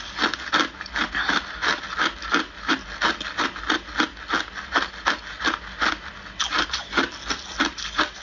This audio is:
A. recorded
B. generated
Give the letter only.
A